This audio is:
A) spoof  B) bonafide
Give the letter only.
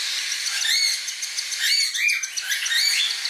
B